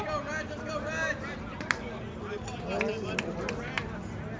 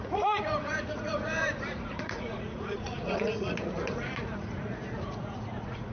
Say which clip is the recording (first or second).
first